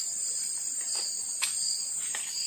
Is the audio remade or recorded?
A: recorded